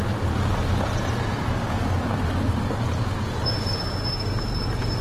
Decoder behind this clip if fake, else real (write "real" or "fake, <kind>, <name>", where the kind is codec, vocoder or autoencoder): real